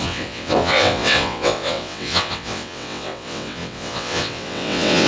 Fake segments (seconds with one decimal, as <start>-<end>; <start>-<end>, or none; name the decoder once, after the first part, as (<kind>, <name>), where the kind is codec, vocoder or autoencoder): 0.0-5.1 (vocoder, WaveNeXt)